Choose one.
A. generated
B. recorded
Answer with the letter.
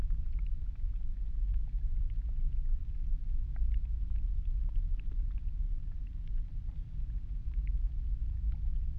B